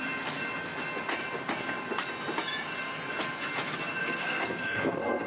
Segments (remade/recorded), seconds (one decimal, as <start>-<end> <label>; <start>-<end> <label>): 0.0-4.0 recorded; 4.0-5.3 remade